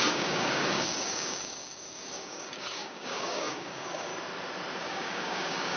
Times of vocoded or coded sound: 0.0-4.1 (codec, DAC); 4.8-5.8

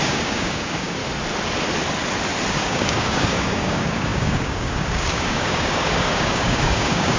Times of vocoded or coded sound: 0.0-1.0 (codec, DAC); 2.5-7.2

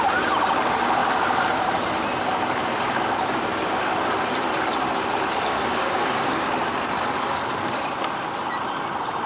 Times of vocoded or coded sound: 5.5-6.5 (codec, DAC)